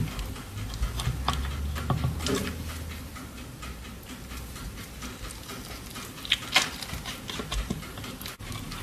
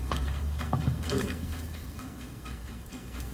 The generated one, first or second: second